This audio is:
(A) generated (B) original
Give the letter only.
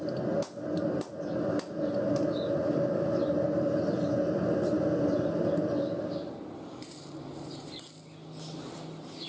B